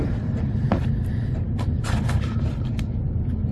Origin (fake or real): real